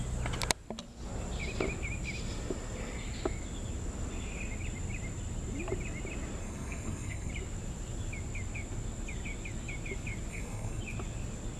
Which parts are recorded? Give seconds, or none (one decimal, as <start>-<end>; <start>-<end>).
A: 0.0-6.4; 7.3-10.3; 10.8-11.6